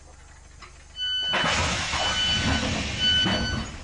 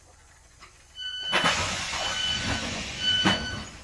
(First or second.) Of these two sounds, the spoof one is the second